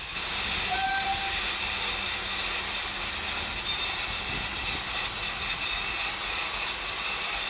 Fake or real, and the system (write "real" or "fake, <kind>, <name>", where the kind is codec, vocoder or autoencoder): real